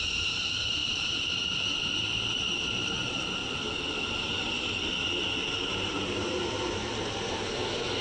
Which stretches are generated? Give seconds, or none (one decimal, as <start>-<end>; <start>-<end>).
0.0-3.4; 5.1-8.0